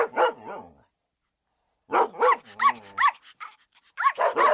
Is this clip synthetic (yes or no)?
no